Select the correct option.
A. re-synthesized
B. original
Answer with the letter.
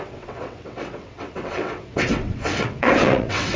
A